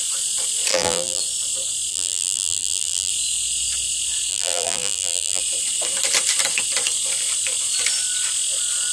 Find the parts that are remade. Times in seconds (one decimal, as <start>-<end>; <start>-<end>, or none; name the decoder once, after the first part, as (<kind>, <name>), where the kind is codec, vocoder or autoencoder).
0.7-1.2 (vocoder, BigVGAN v2); 1.9-3.1; 4.3-5.4